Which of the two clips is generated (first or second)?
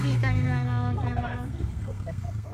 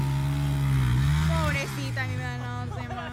first